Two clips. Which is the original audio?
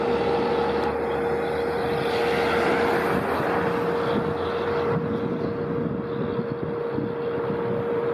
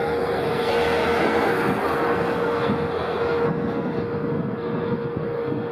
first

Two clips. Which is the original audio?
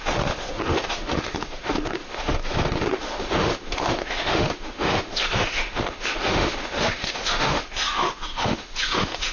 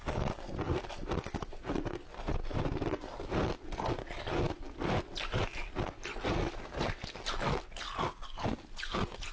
second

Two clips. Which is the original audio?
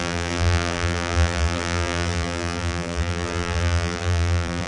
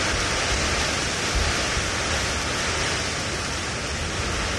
second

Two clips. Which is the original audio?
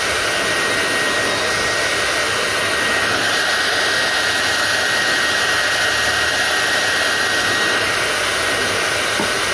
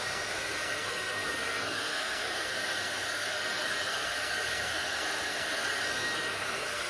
first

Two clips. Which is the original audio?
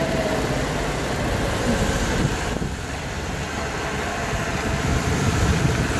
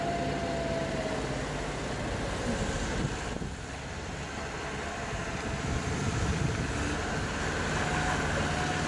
second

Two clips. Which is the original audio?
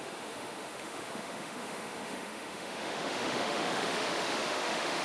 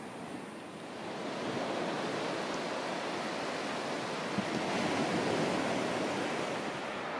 second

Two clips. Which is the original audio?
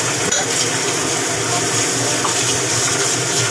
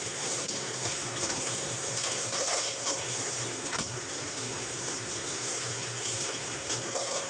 first